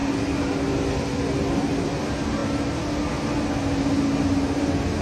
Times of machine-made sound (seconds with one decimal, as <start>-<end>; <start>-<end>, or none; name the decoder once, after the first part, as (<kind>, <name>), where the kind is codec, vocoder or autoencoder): none